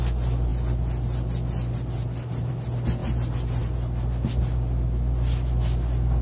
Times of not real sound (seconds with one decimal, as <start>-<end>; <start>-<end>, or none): none